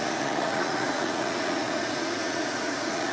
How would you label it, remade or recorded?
remade